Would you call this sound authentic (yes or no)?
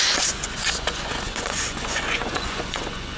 no